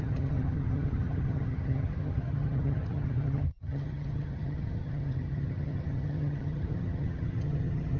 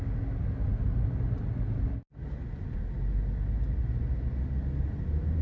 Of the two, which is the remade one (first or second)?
first